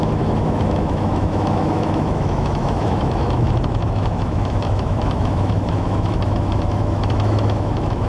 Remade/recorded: remade